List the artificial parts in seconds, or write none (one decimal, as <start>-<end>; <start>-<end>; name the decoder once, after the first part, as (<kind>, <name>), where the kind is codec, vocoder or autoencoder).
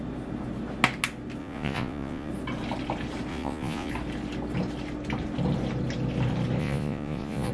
1.4-2.3 (vocoder, Vocos); 3.3-3.9; 6.6-7.5